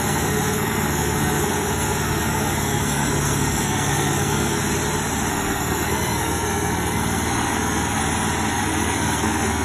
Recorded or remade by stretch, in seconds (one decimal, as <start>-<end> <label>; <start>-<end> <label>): 0.0-4.6 remade; 4.6-5.3 recorded; 5.3-8.0 remade; 8.0-8.5 recorded; 8.5-9.6 remade